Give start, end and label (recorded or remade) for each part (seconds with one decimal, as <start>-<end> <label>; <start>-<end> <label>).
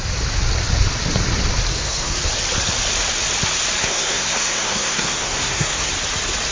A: 0.0-1.7 recorded; 1.7-2.3 remade; 2.3-3.8 recorded; 3.8-5.9 remade; 5.9-6.5 recorded